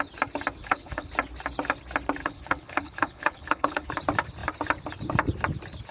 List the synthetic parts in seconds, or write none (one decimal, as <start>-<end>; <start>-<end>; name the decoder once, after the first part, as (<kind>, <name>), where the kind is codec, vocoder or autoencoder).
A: 0.6-1.1 (codec, HILCodec); 2.2-3.9